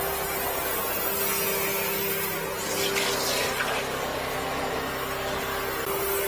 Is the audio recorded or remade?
recorded